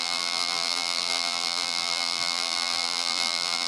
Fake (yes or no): yes